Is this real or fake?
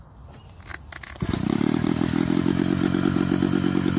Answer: real